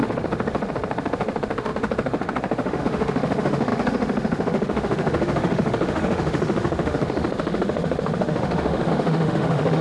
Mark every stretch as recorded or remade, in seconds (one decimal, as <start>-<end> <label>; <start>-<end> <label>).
0.0-9.8 remade